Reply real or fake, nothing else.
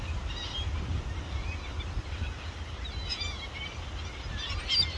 real